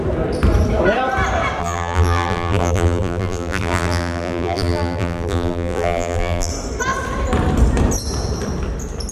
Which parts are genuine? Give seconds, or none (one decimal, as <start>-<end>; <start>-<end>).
0.0-1.6; 6.5-9.1